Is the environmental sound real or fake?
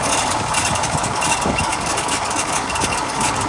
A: fake